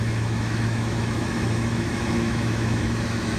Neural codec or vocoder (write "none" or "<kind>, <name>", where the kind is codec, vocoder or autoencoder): autoencoder, DAC-VAE